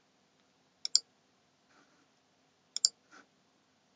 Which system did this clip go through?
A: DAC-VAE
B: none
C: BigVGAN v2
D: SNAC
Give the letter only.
B